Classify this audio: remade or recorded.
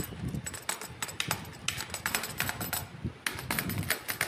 recorded